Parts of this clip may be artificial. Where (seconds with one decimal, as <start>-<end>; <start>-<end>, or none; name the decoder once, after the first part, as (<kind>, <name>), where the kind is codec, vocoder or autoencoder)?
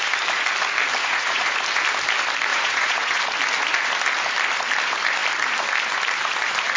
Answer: 1.0-1.5 (vocoder, Vocos); 2.5-3.2